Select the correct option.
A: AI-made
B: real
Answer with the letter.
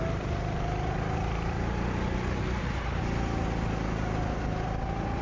B